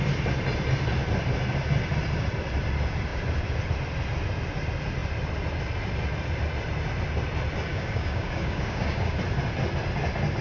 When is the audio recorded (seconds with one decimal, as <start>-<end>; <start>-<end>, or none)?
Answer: 0.0-7.7; 9.2-10.4